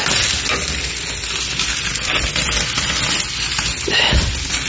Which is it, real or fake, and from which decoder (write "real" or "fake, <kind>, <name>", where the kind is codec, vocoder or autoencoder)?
real